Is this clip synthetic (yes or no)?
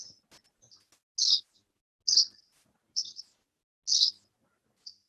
no